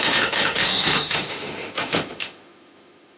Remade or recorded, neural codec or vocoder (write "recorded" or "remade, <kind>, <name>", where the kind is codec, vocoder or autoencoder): remade, autoencoder, DAC-VAE